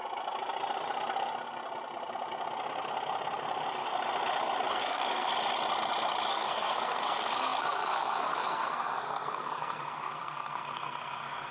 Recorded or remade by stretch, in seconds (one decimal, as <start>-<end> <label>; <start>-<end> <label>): 0.0-4.7 recorded; 4.7-5.3 remade; 5.3-6.3 recorded; 6.3-11.5 remade